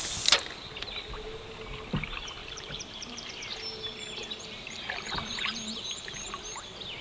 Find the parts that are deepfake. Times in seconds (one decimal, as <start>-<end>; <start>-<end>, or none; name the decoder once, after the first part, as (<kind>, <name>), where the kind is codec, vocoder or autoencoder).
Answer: 2.4-3.3 (vocoder, BigVGAN v2); 4.2-6.3